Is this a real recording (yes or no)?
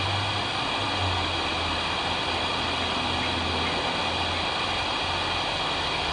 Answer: yes